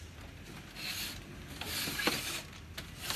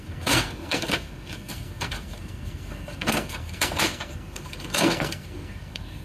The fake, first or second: second